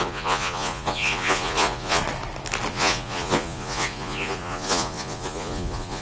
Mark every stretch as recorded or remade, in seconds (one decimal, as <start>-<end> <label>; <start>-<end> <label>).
0.0-2.0 remade; 2.0-2.7 recorded; 2.7-6.0 remade